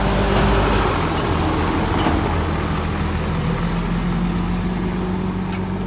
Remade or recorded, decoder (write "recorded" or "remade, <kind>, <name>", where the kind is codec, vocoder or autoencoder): recorded